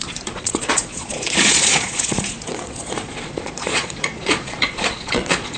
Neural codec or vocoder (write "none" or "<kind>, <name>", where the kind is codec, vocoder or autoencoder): vocoder, Vocos